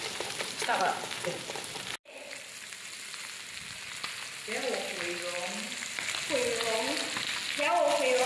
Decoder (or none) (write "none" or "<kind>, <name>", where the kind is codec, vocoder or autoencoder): none